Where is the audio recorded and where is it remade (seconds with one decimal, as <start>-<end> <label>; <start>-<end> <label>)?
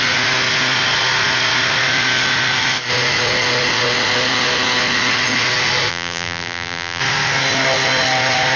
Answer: 0.0-5.9 recorded; 5.9-7.0 remade; 7.0-8.6 recorded